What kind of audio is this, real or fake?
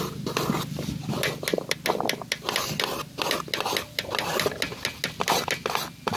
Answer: real